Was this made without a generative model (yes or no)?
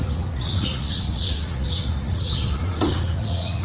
no